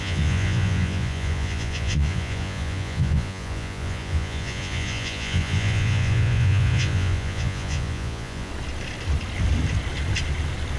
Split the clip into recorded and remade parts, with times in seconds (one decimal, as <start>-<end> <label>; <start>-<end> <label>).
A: 0.0-8.5 remade; 8.5-10.8 recorded

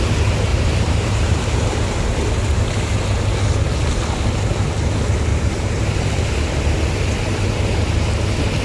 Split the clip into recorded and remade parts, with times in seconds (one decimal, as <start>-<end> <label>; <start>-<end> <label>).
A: 0.0-0.5 recorded; 0.5-1.9 remade; 1.9-5.3 recorded; 5.3-5.9 remade; 5.9-8.6 recorded

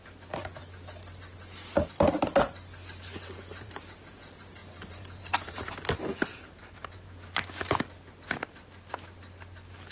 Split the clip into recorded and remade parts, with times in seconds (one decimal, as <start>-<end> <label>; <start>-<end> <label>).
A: 0.0-4.6 recorded; 4.6-7.1 remade; 7.1-9.9 recorded

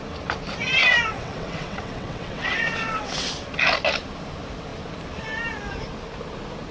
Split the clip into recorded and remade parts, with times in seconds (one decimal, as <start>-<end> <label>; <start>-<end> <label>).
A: 0.0-1.1 recorded; 1.1-3.3 remade; 3.3-6.7 recorded

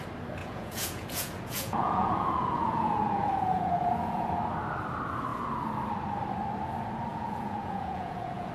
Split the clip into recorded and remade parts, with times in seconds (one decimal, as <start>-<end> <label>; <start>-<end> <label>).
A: 0.0-0.4 recorded; 0.4-4.3 remade; 4.3-7.1 recorded; 7.1-8.5 remade

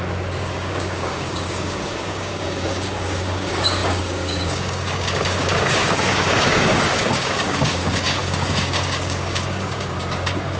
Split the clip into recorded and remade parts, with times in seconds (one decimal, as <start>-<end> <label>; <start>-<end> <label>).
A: 0.0-10.6 remade

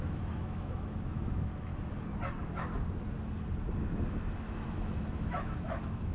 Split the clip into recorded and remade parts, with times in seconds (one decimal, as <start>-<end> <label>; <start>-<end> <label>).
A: 0.0-1.7 remade; 1.7-4.3 recorded; 4.3-6.1 remade